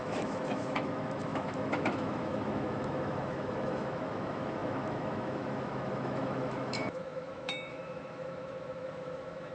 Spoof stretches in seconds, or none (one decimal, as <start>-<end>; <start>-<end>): 0.0-9.5